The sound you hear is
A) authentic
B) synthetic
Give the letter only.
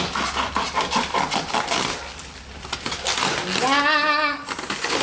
A